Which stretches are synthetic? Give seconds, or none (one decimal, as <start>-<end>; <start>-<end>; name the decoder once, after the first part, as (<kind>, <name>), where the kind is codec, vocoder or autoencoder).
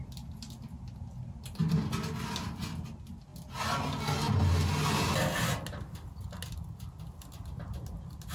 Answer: none